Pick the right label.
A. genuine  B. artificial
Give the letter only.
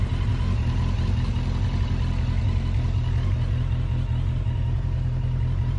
A